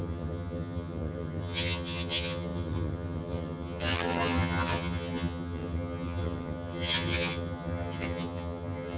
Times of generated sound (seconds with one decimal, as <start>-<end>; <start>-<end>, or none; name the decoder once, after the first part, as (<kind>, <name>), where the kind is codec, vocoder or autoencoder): 0.0-9.0 (vocoder, HiFi-GAN)